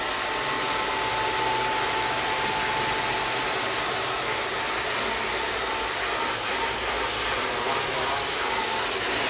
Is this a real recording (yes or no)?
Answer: yes